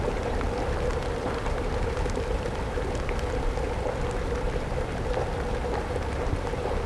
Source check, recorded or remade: recorded